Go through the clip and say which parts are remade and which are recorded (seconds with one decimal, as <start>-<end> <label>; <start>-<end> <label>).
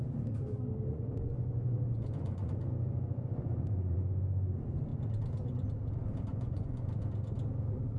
0.0-0.9 recorded; 0.9-4.1 remade; 4.1-6.3 recorded; 6.3-6.9 remade; 6.9-8.0 recorded